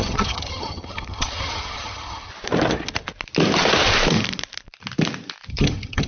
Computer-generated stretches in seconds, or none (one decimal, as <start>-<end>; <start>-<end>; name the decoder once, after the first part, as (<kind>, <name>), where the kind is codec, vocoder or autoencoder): 0.0-2.3 (vocoder, HiFi-GAN); 5.5-6.1